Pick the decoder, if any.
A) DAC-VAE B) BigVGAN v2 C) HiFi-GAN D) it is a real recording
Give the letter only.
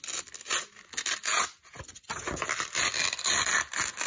D